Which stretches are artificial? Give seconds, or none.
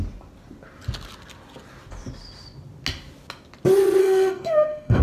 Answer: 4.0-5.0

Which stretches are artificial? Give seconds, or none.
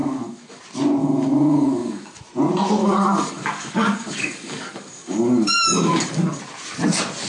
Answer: 0.0-0.6; 1.0-2.2; 2.8-6.4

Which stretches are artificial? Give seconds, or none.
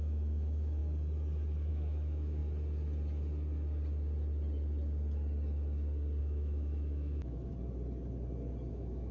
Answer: 0.0-0.8; 1.7-2.4; 6.2-7.5; 8.7-9.1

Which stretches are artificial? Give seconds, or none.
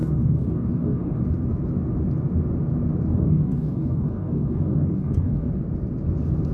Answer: 0.0-1.2; 3.1-5.5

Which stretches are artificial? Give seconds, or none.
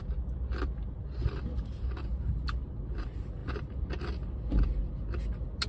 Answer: none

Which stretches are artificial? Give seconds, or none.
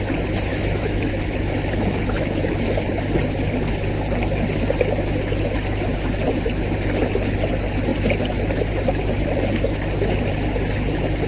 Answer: 0.5-2.5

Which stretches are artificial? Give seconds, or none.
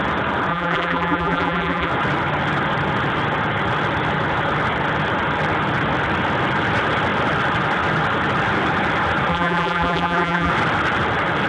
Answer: 0.5-1.9; 9.3-10.5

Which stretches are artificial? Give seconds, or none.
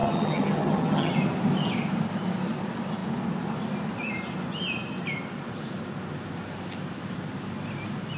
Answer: 0.0-1.1